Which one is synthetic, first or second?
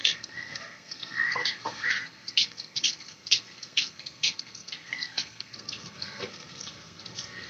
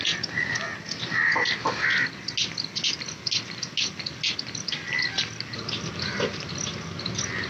first